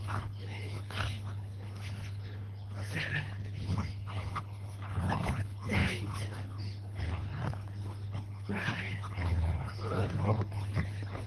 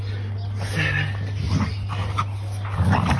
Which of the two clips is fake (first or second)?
first